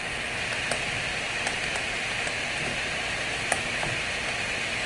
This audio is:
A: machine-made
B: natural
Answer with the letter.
B